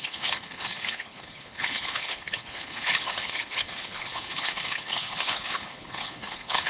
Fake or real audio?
fake